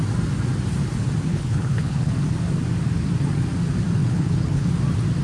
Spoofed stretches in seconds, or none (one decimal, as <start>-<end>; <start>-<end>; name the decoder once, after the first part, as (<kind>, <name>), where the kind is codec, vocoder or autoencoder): 1.3-2.1 (codec, HILCodec); 4.0-4.7

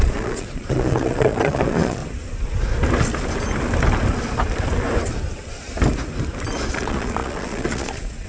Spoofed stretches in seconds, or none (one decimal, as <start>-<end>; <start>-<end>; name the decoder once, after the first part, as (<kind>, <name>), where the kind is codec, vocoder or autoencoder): 0.0-2.0 (vocoder, Vocos); 6.7-8.3